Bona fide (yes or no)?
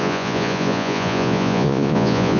no